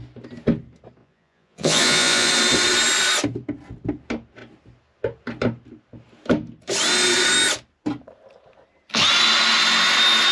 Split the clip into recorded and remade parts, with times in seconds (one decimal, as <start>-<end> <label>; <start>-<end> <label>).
0.0-1.0 recorded; 1.0-2.3 remade; 2.3-10.3 recorded